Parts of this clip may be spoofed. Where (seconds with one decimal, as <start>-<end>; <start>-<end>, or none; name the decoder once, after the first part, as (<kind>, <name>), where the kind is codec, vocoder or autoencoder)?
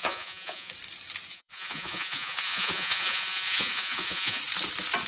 0.0-0.7 (vocoder, Vocos); 1.3-4.4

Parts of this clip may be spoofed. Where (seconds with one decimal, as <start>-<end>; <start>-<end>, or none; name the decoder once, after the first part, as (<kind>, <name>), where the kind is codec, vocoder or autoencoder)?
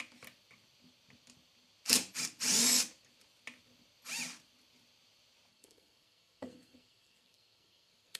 5.5-8.2 (codec, SNAC)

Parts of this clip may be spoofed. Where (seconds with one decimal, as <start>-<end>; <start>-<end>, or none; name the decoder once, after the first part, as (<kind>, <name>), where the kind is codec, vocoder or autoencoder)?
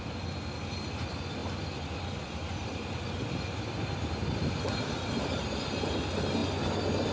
1.4-4.6 (vocoder, BigVGAN v2); 6.4-7.1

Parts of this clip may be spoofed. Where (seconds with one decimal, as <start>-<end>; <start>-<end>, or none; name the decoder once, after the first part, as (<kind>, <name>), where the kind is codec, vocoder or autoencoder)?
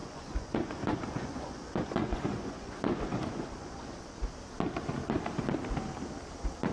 0.0-4.0 (vocoder, Vocos)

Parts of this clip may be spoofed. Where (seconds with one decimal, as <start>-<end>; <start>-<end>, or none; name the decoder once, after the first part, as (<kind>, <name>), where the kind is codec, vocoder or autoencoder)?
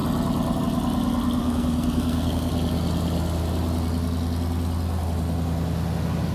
1.4-2.5 (codec, SNAC)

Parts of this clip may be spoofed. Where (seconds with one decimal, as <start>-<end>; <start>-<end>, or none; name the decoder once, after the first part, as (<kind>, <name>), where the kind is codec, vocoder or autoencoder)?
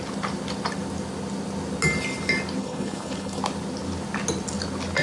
2.6-3.4 (codec, HILCodec)